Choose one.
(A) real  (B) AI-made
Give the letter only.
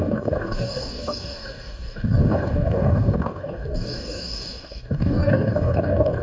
B